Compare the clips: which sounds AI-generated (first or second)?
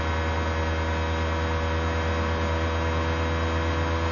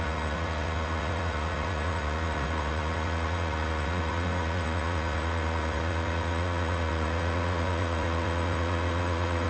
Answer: second